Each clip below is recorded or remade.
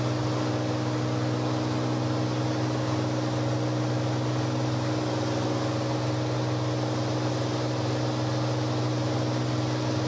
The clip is recorded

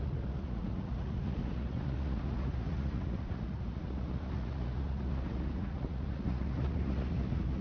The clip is remade